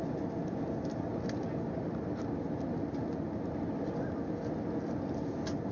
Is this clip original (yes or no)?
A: yes